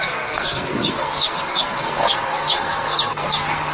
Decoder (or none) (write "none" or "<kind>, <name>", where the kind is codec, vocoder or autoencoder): codec, SNAC